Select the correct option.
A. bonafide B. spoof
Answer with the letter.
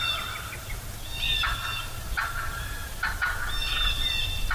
A